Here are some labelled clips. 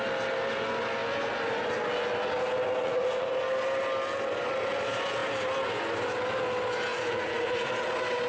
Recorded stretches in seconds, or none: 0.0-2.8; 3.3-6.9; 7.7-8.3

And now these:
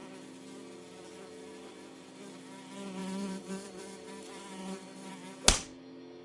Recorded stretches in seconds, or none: 0.0-3.0; 5.1-6.2

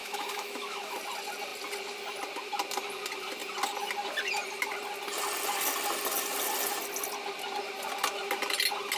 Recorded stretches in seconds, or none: 1.0-9.0

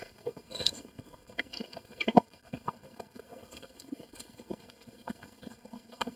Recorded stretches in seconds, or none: none

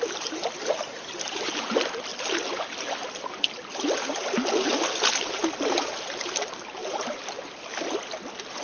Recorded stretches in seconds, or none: 1.4-6.8; 7.7-8.6

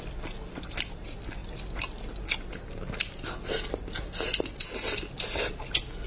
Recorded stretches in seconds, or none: 0.0-6.1